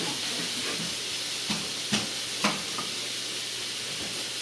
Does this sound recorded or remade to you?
recorded